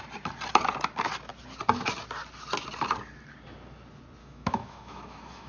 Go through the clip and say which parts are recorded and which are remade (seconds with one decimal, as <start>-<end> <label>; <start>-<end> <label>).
0.0-4.2 recorded; 4.2-5.5 remade